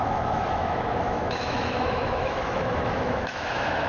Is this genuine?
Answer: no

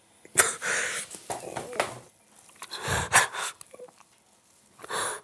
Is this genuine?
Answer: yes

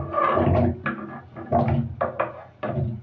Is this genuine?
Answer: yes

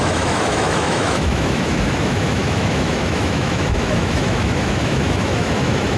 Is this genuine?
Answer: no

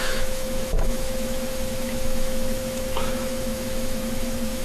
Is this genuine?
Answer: no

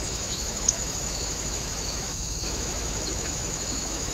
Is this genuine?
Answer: no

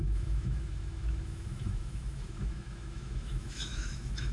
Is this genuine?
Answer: no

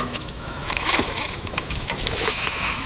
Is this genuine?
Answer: no